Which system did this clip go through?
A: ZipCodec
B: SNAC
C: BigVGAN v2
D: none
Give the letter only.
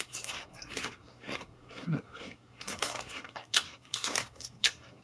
B